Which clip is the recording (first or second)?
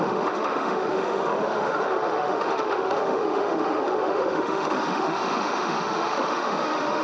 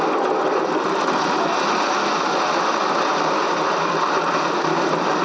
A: second